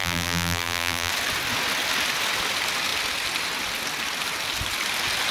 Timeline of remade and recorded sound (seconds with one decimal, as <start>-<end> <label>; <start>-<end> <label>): 0.0-1.1 remade; 1.1-5.3 recorded